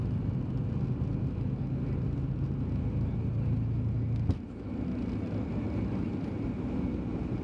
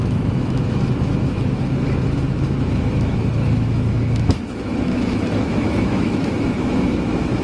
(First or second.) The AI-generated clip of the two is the second